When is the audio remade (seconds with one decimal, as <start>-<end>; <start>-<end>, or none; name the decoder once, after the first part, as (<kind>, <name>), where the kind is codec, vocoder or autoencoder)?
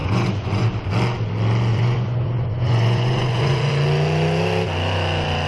0.0-0.7 (vocoder, Vocos); 1.7-3.7